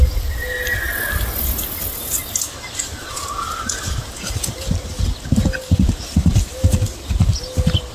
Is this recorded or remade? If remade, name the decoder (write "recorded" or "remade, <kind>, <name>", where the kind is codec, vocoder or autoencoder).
recorded